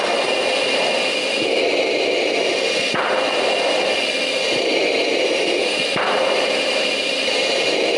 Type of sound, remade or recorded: recorded